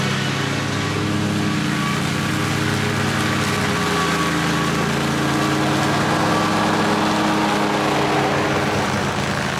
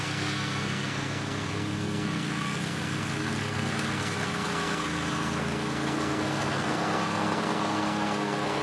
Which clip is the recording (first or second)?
first